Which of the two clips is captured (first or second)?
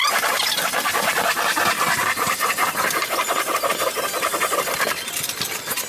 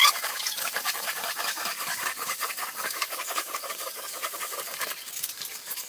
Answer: first